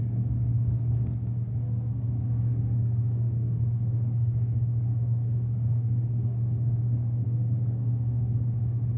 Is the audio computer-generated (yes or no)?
yes